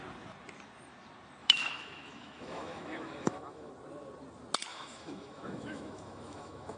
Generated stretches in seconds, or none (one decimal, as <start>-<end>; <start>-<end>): 1.4-3.7; 4.7-6.8